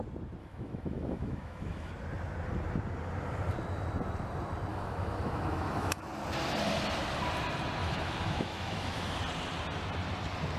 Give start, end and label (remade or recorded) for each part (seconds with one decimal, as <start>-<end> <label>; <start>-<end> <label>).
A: 0.0-0.4 recorded; 0.4-1.9 remade; 1.9-4.7 recorded; 4.7-6.0 remade; 6.0-7.8 recorded; 7.8-9.2 remade; 9.2-10.6 recorded